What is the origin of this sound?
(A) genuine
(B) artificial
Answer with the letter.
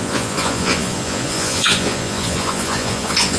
B